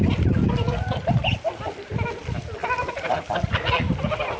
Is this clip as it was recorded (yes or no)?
yes